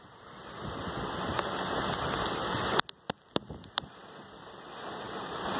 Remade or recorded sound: recorded